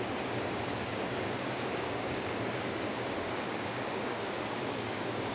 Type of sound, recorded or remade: remade